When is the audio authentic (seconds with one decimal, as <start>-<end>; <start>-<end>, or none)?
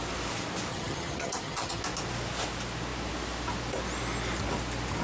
0.0-0.7; 1.8-5.0